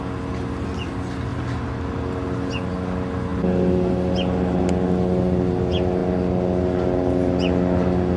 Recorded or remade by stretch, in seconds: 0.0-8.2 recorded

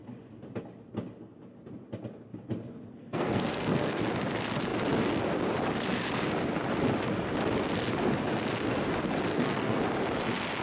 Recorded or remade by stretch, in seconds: 0.0-2.9 recorded; 2.9-4.0 remade; 4.0-9.3 recorded; 9.3-9.8 remade; 9.8-10.6 recorded

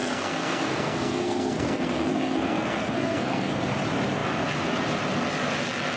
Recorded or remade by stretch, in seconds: 0.0-3.6 remade; 3.6-6.0 recorded

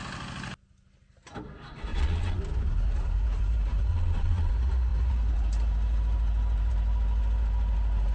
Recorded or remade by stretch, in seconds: 0.0-1.9 recorded; 1.9-2.4 remade; 2.4-3.9 recorded; 3.9-4.5 remade; 4.5-8.1 recorded

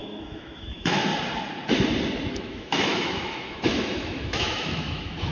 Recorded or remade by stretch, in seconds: 0.0-1.1 remade; 1.1-2.3 recorded; 2.3-5.3 remade